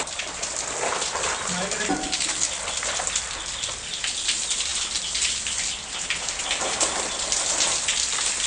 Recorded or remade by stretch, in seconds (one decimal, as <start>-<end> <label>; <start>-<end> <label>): 0.0-8.5 recorded